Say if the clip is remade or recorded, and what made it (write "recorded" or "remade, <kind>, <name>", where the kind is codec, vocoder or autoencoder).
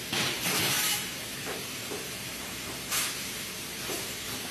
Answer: remade, vocoder, BigVGAN v2